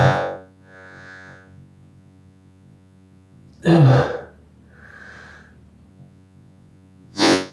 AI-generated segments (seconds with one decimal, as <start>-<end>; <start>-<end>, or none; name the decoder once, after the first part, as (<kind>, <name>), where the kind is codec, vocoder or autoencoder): 0.0-3.5 (vocoder, Vocos); 5.9-7.5